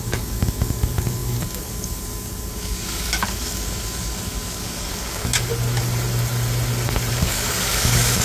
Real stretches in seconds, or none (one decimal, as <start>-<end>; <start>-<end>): 5.5-7.1